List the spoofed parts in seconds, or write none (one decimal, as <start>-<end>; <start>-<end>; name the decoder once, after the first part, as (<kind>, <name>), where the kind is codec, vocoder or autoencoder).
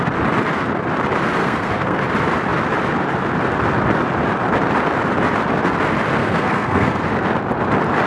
1.4-2.0 (codec, SNAC); 6.2-7.0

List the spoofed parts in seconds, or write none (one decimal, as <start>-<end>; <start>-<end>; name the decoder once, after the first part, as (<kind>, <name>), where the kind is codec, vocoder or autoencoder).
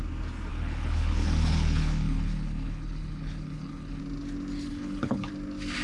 0.5-4.0 (codec, HILCodec); 4.7-5.3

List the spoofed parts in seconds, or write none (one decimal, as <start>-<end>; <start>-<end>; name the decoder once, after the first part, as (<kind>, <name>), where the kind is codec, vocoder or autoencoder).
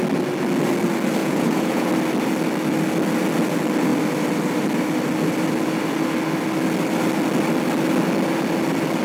1.2-1.9 (vocoder, Vocos)